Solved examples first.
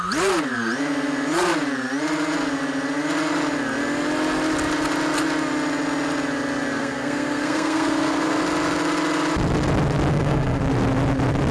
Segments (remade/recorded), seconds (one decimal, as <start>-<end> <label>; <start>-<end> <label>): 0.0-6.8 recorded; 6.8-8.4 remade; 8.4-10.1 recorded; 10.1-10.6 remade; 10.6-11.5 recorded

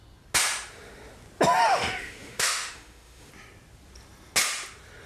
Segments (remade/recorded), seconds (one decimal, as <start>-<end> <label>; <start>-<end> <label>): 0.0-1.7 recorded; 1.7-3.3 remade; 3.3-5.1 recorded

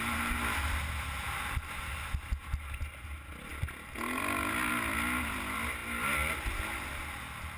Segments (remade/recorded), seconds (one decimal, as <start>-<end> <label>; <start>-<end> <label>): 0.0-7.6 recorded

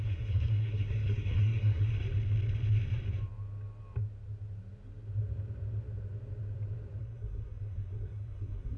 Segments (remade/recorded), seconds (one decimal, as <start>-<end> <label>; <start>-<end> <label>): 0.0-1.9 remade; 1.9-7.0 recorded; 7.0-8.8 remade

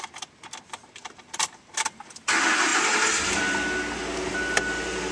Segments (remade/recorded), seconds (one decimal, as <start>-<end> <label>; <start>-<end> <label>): 0.0-5.1 recorded

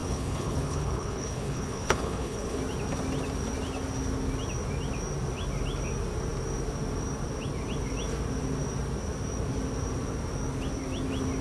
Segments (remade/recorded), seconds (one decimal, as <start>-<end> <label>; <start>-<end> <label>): 0.0-2.6 remade; 2.6-11.4 recorded